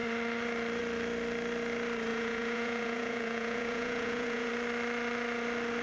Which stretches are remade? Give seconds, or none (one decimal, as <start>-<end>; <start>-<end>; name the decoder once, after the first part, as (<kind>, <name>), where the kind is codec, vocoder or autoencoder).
2.1-4.5 (vocoder, Vocos)